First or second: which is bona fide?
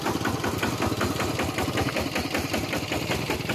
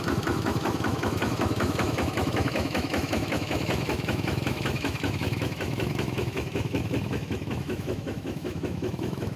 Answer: first